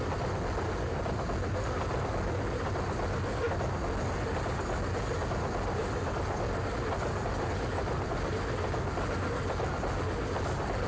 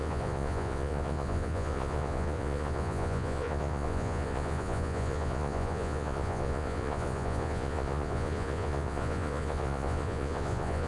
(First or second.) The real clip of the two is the first